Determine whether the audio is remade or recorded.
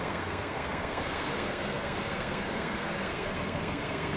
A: remade